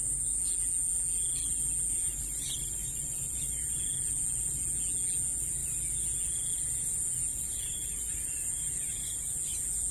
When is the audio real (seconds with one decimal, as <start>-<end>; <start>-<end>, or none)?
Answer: 0.0-2.8; 4.5-7.3; 8.0-9.9